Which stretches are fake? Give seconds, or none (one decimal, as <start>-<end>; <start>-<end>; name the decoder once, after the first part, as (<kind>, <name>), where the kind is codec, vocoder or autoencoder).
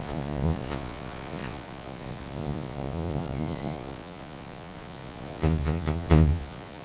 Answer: 0.0-6.8 (vocoder, Vocos)